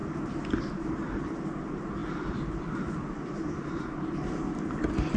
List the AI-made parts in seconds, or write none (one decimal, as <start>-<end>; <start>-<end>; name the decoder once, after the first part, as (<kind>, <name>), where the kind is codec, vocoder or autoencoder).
none